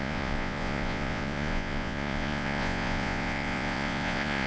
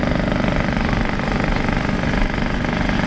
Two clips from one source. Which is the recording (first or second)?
second